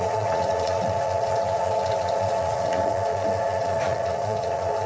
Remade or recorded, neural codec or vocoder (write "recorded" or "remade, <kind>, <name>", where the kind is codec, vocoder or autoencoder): remade, vocoder, Vocos